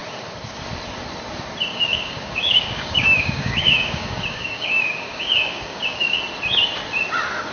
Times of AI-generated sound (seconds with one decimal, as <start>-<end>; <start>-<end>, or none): 1.7-6.2